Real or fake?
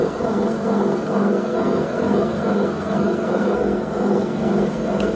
fake